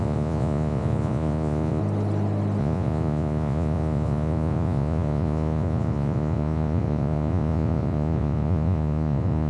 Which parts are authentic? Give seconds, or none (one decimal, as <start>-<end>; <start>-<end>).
1.8-2.6